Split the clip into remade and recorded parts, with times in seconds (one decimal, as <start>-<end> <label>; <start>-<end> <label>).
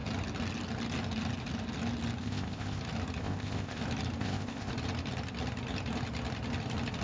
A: 0.0-2.2 recorded; 2.2-2.8 remade; 2.8-3.2 recorded; 3.2-3.8 remade; 3.8-4.2 recorded; 4.2-4.7 remade; 4.7-7.0 recorded